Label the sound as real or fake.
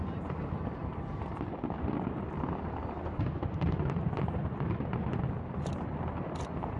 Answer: real